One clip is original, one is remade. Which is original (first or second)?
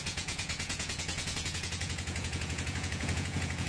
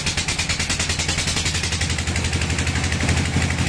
second